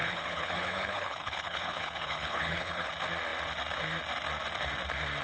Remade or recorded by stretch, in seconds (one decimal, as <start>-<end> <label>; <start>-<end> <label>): 0.0-2.9 remade; 2.9-5.2 recorded